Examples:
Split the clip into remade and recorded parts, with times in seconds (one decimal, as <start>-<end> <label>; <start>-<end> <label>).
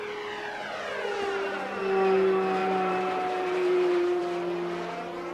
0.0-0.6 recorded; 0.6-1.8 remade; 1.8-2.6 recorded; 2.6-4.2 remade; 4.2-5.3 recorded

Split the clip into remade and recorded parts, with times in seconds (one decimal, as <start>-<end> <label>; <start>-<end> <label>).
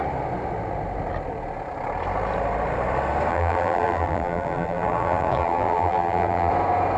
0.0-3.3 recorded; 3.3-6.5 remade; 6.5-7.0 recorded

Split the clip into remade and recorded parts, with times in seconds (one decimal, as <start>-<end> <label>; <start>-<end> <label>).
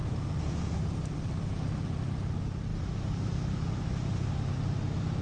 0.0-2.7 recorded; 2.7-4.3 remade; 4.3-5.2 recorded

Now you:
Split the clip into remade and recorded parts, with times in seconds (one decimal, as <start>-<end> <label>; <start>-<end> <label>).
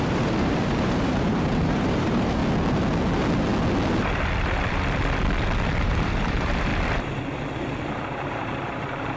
0.0-2.4 remade; 2.4-5.8 recorded; 5.8-6.7 remade; 6.7-7.5 recorded; 7.5-9.2 remade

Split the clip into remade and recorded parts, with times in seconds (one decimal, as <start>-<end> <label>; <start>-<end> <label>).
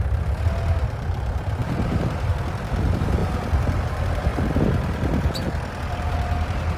0.0-1.6 recorded; 1.6-2.3 remade; 2.3-6.8 recorded